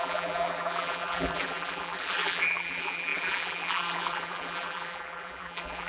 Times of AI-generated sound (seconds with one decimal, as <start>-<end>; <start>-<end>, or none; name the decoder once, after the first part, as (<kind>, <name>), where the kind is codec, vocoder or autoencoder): 0.0-5.9 (vocoder, BigVGAN v2)